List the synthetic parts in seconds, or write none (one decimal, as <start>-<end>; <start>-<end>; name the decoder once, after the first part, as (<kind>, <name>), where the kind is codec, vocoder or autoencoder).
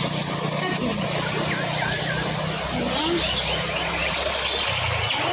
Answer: none